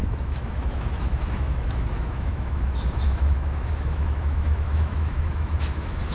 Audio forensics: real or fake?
fake